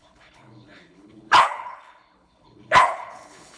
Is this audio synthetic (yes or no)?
yes